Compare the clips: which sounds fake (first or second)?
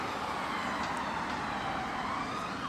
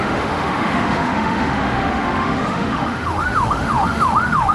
second